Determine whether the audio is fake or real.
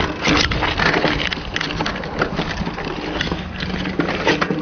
real